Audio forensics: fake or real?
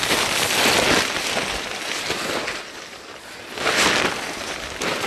real